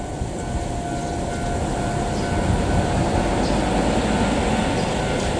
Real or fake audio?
real